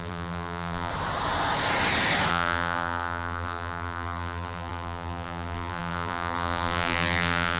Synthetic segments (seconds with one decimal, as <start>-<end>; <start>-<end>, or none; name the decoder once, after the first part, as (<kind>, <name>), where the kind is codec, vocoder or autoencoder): 0.0-0.9 (vocoder, BigVGAN v2); 2.3-7.6